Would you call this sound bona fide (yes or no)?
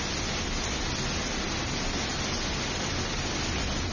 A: yes